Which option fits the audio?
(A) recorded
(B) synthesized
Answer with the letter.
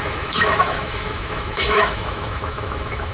B